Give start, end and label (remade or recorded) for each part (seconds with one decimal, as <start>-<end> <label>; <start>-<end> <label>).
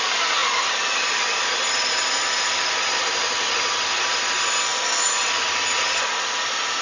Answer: 0.0-6.8 recorded